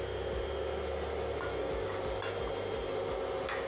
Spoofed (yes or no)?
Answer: no